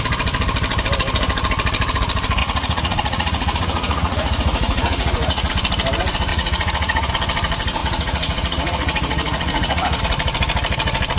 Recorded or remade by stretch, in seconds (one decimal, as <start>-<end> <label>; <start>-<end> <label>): 0.0-2.4 recorded; 2.4-5.5 remade; 5.5-6.3 recorded; 6.3-7.1 remade; 7.1-7.8 recorded; 7.8-10.0 remade; 10.0-11.2 recorded